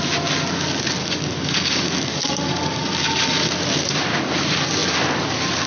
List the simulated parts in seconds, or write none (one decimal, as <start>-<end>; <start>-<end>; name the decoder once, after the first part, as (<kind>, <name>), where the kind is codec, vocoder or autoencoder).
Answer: 1.0-3.5 (codec, DAC)